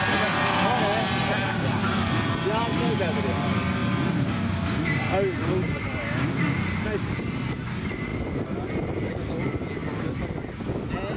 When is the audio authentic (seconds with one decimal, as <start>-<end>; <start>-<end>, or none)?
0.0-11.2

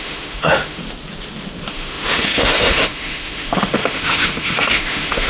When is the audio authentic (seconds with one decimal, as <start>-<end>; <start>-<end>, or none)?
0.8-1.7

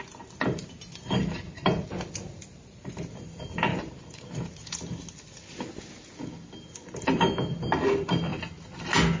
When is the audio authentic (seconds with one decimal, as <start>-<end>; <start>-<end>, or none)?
0.0-2.5; 3.1-3.7; 4.5-9.2